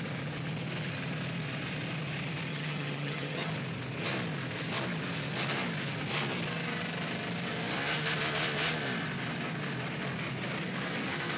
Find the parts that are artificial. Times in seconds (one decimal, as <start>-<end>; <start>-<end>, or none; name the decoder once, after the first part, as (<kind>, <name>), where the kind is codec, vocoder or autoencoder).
2.5-3.5 (vocoder, HiFi-GAN)